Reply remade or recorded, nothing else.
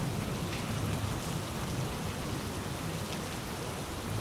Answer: recorded